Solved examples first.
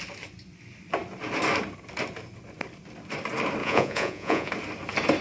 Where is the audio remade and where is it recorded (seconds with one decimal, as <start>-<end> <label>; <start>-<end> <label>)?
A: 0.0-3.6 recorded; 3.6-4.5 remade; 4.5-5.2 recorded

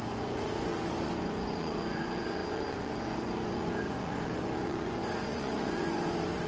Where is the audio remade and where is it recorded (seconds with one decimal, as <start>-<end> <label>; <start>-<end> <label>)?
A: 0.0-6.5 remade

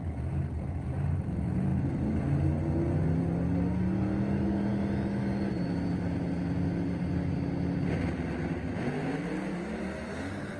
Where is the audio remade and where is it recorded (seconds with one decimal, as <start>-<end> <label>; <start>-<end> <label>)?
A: 0.0-10.6 recorded

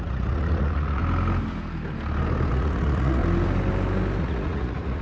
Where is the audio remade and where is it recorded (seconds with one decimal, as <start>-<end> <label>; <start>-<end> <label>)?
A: 0.0-1.0 remade; 1.0-2.5 recorded; 2.5-3.2 remade; 3.2-4.2 recorded; 4.2-5.0 remade

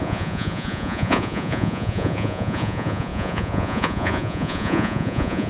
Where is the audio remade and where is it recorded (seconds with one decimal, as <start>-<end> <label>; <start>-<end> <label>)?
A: 0.0-5.5 remade

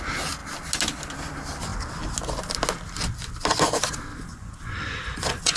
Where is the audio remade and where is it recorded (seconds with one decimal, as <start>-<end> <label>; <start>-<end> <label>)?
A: 0.0-4.1 recorded; 4.1-5.6 remade